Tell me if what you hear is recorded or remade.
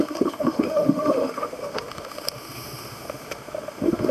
remade